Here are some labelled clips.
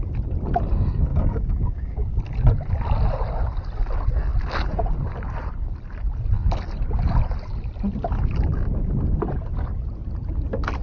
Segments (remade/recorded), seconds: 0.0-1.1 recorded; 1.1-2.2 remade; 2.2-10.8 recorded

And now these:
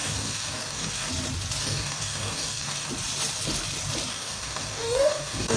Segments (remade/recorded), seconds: 0.0-1.1 remade; 1.1-1.6 recorded; 1.6-2.9 remade; 2.9-4.1 recorded; 4.1-5.6 remade

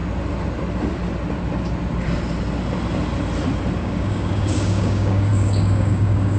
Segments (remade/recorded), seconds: 0.0-3.8 recorded; 3.8-6.4 remade

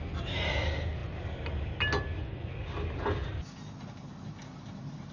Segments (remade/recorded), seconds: 0.0-5.1 recorded

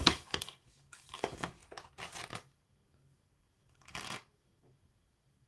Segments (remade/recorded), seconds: 0.0-1.6 remade; 1.6-2.3 recorded; 2.3-5.5 remade

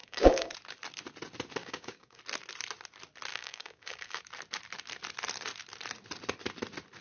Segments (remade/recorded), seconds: 0.0-0.5 remade; 0.5-1.6 recorded; 1.6-2.2 remade; 2.2-3.3 recorded; 3.3-4.2 remade; 4.2-7.0 recorded

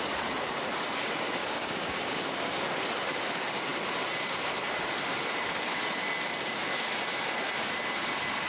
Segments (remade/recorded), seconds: 0.0-1.4 recorded; 1.4-2.6 remade; 2.6-8.5 recorded